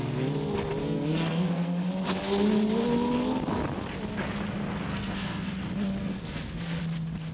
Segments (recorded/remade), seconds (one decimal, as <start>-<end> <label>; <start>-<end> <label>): 0.0-0.8 recorded; 0.8-1.9 remade; 1.9-4.9 recorded; 4.9-5.5 remade; 5.5-6.0 recorded; 6.0-6.8 remade; 6.8-7.3 recorded